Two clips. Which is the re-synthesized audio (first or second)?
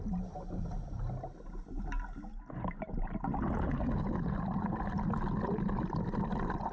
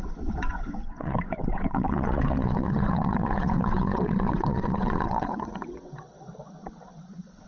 second